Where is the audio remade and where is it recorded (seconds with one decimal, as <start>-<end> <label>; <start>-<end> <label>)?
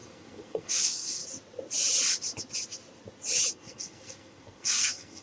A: 0.0-1.2 remade; 1.2-3.5 recorded; 3.5-5.2 remade